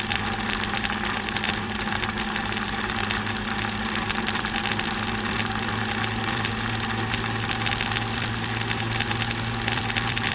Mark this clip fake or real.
fake